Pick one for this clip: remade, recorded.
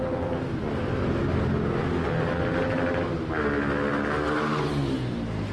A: recorded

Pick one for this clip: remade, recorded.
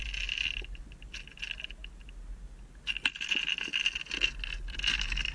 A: recorded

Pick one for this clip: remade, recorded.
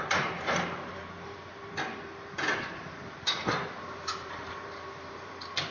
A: remade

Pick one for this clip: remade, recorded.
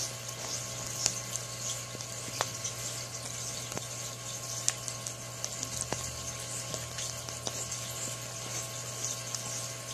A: recorded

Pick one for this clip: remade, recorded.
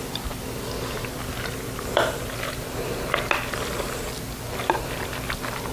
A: recorded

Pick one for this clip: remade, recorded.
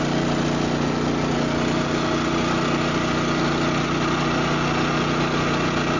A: recorded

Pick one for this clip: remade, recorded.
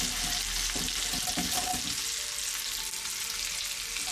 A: recorded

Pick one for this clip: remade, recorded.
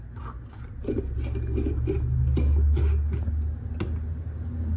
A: recorded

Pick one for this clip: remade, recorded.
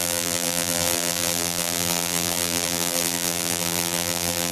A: remade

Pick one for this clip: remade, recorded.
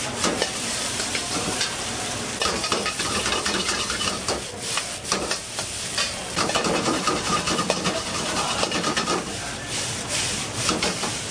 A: remade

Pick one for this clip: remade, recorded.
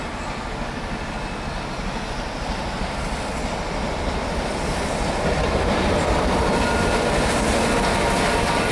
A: recorded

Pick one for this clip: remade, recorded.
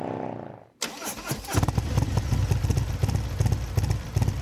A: remade